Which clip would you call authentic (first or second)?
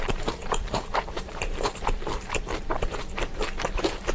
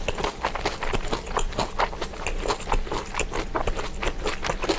second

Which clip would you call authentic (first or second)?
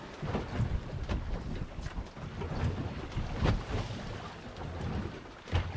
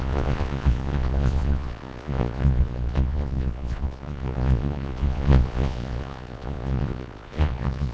first